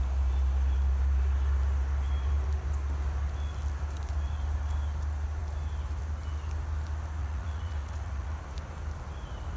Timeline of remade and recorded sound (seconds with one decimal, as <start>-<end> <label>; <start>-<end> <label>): 0.0-7.2 recorded; 7.2-8.3 remade; 8.3-9.6 recorded